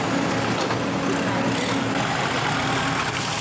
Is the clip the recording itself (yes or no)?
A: yes